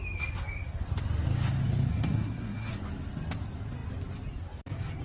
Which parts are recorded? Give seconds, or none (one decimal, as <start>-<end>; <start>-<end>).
0.0-1.9; 2.7-5.0

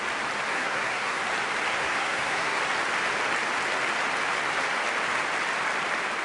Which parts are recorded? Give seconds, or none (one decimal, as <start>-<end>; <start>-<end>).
0.0-0.5; 1.2-1.7; 2.6-6.2

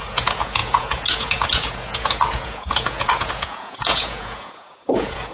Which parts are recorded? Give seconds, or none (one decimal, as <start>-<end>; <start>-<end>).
none

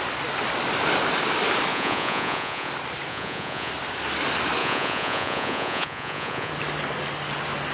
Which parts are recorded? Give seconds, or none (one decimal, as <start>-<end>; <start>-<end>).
0.0-1.7; 2.7-3.1; 3.7-4.6; 6.5-7.7

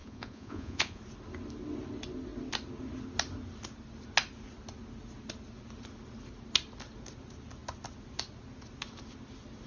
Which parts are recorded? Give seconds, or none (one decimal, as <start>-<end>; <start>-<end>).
1.0-9.7

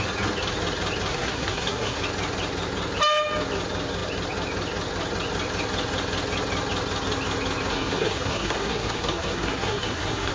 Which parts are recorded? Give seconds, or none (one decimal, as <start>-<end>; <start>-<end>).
0.0-1.1; 2.0-7.7

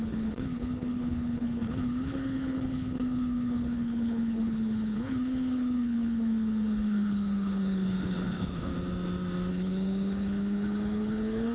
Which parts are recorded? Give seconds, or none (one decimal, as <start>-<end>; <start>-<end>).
8.7-9.5

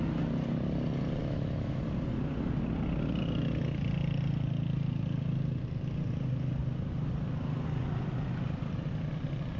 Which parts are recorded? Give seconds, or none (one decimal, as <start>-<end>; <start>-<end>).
0.0-1.2; 1.8-9.6